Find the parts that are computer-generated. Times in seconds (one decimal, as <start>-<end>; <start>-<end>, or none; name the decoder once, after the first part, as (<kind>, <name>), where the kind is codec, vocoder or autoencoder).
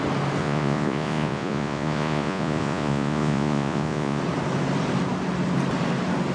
0.4-4.2 (vocoder, Vocos)